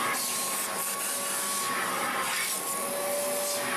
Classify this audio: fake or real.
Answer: real